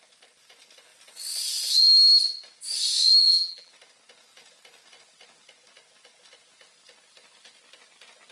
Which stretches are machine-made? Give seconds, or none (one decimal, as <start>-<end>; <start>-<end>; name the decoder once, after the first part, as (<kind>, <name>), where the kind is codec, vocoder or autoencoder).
3.2-3.7 (vocoder, BigVGAN v2)